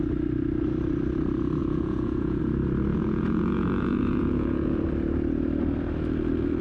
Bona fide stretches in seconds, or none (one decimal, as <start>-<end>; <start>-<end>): 0.0-1.6; 2.4-2.9; 4.8-6.6